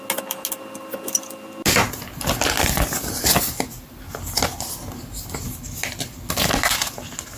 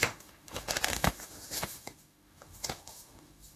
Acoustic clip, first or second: first